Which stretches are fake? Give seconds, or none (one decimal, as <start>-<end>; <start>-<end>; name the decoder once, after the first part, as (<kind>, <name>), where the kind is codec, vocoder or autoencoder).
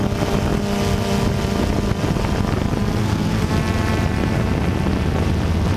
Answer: 3.0-3.5 (codec, SNAC)